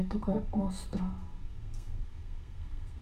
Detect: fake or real fake